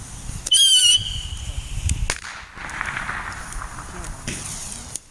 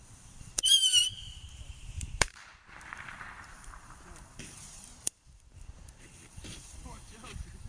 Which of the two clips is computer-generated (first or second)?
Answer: second